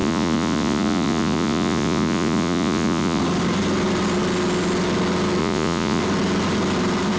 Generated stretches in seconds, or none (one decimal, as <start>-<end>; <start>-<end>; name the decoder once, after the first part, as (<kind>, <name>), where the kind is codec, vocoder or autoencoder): 0.0-3.2 (vocoder, Vocos); 5.4-6.0